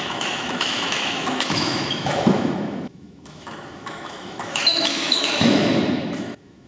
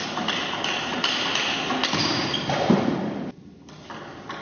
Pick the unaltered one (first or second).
second